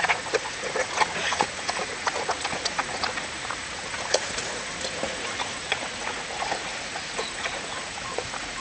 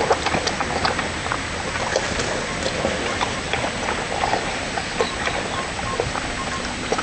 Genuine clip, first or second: second